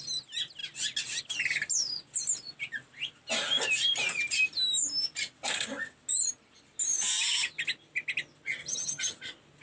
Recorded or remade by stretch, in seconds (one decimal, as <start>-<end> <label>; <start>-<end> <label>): 0.0-8.6 recorded; 8.6-9.2 remade; 9.2-9.6 recorded

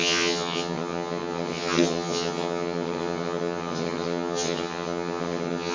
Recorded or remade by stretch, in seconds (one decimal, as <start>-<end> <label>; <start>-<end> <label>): 0.0-5.7 remade

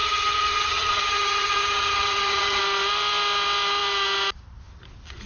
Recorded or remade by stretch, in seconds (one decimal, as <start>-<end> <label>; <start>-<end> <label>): 0.0-2.6 remade; 2.6-5.3 recorded

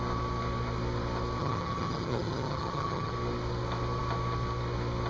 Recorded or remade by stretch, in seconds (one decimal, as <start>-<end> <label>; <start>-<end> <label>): 0.0-1.4 recorded; 1.4-3.1 remade; 3.1-5.1 recorded